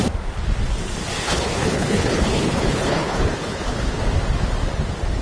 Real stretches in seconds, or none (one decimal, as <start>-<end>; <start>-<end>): 0.0-1.2; 4.0-5.2